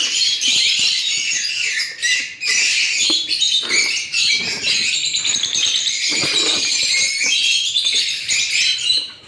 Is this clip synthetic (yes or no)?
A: yes